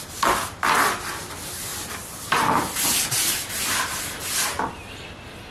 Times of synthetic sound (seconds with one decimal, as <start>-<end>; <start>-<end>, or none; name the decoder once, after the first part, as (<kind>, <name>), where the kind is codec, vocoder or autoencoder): none